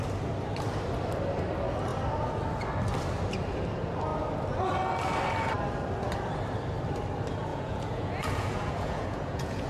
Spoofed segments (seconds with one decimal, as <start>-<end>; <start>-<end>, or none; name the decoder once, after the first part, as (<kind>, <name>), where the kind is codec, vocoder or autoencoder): 7.5-9.7 (vocoder, Vocos)